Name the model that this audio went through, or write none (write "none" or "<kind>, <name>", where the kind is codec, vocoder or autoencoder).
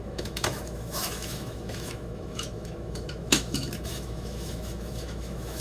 autoencoder, DAC-VAE